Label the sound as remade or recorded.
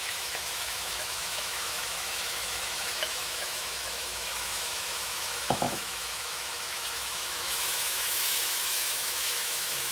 remade